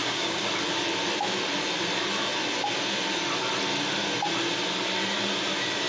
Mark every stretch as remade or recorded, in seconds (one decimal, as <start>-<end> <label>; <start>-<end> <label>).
0.0-0.5 remade; 0.5-5.9 recorded